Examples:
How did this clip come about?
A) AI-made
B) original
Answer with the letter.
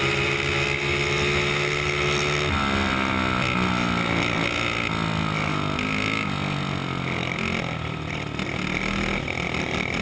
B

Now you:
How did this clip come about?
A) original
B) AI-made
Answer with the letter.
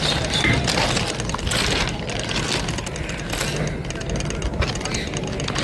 A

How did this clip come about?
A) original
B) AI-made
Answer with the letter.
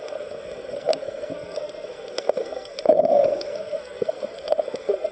B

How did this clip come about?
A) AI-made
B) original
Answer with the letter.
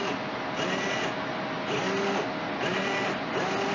B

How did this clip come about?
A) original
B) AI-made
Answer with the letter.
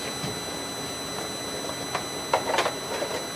A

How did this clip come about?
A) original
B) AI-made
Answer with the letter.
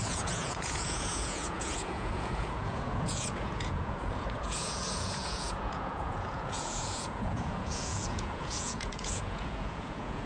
B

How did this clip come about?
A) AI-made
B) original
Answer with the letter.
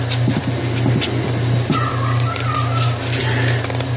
B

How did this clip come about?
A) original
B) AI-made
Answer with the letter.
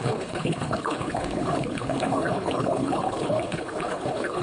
B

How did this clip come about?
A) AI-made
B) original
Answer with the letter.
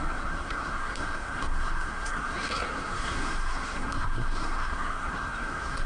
A